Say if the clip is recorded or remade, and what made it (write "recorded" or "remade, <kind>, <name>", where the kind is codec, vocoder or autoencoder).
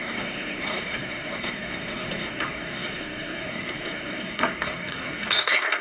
remade, codec, SNAC